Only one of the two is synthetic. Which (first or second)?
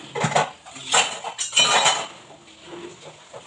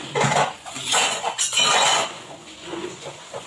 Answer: second